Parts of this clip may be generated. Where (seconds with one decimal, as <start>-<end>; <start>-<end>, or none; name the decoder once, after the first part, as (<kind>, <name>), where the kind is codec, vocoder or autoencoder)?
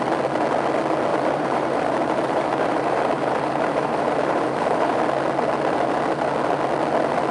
1.1-5.0 (vocoder, BigVGAN v2)